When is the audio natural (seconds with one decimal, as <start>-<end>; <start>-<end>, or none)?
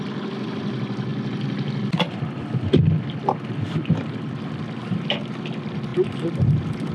0.0-6.9